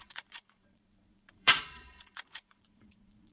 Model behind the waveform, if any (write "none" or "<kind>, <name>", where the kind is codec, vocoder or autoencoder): vocoder, Vocos